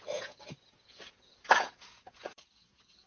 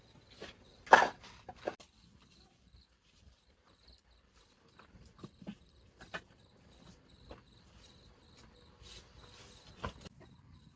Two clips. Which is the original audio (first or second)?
second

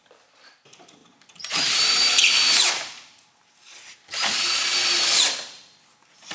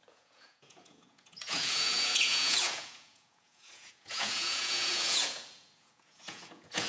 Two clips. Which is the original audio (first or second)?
first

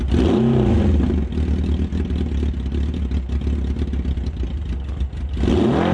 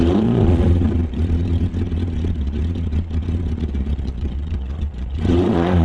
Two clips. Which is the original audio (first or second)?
first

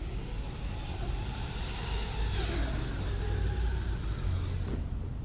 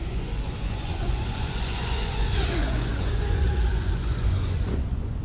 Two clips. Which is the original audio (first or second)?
first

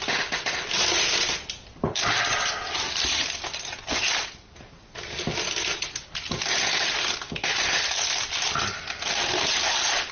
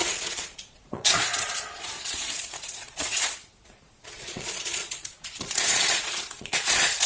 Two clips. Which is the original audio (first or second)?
first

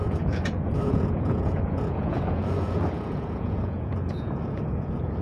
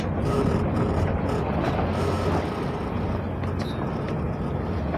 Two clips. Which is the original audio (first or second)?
second